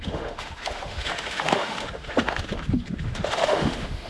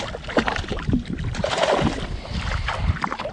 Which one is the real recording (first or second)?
second